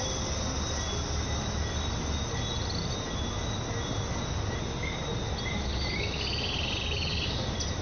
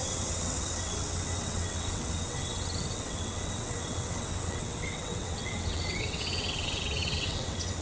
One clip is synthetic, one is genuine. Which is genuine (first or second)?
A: first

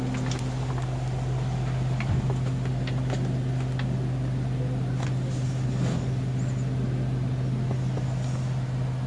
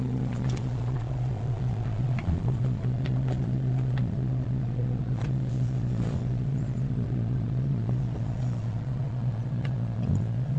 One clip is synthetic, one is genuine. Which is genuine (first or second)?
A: first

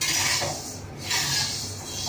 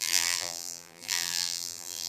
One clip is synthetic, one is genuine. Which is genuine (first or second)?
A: first